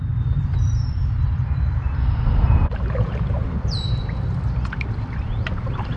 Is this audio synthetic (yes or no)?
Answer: yes